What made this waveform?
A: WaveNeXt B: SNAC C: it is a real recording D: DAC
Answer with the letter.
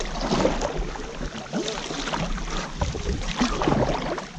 C